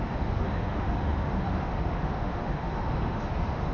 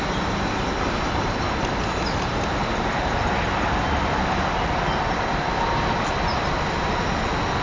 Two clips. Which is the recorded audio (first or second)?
second